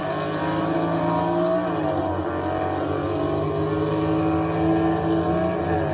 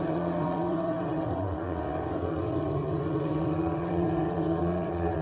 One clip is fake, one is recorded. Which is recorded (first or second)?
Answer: first